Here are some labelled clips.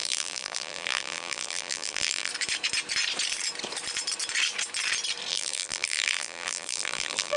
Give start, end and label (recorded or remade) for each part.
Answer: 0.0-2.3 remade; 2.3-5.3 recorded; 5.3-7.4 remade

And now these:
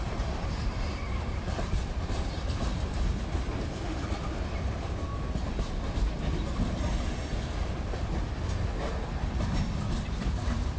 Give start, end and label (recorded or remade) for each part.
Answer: 0.0-5.1 remade; 5.1-10.3 recorded; 10.3-10.8 remade

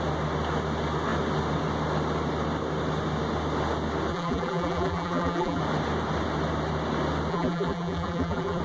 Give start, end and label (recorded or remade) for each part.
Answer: 0.0-4.1 recorded; 4.1-5.6 remade; 5.6-7.3 recorded; 7.3-8.6 remade

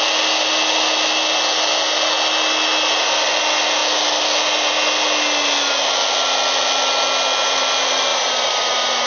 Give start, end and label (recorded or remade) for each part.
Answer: 0.0-8.1 recorded; 8.1-9.1 remade

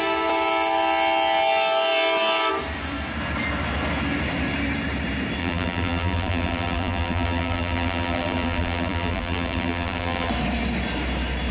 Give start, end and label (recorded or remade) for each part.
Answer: 0.0-5.4 recorded; 5.4-10.3 remade; 10.3-11.5 recorded

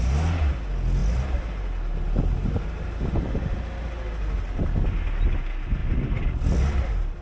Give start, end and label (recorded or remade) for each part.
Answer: 0.0-7.2 recorded

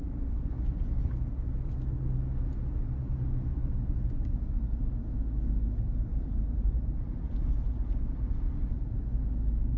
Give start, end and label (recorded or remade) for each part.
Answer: 0.0-3.5 recorded; 3.5-4.8 remade; 4.8-6.1 recorded; 6.1-9.0 remade; 9.0-9.8 recorded